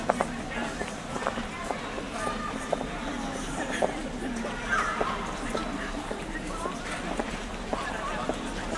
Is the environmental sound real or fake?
real